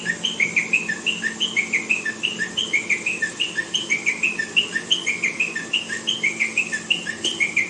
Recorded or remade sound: recorded